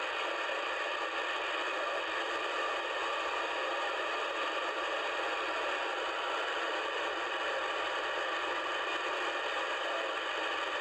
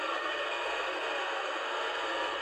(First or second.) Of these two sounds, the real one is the first